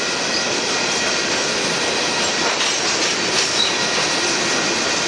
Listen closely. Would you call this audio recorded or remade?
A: recorded